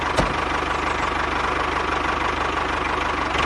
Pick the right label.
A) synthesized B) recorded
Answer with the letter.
B